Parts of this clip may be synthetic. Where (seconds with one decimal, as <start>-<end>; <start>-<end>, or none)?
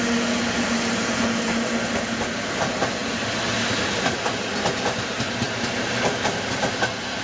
none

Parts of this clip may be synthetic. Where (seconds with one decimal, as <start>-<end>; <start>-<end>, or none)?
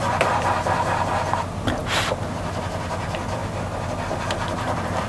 none